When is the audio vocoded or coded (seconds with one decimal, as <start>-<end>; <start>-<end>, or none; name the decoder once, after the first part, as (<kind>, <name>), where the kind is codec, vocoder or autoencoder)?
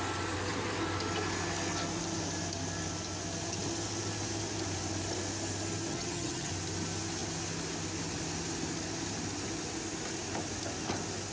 5.9-6.5 (vocoder, HiFi-GAN)